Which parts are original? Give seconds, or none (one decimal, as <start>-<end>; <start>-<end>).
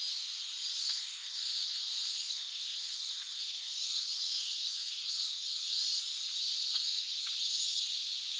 0.0-0.8; 5.8-6.7; 7.3-8.4